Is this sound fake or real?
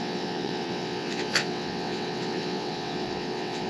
fake